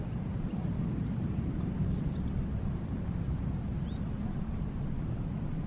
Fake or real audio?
fake